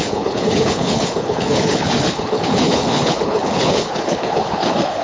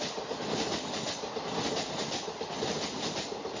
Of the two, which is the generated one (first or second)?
first